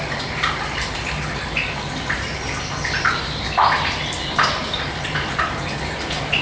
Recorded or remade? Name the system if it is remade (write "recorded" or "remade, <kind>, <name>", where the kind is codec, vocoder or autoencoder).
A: recorded